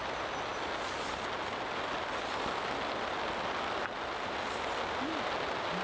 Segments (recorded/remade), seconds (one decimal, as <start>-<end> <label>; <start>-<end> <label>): 0.0-5.8 recorded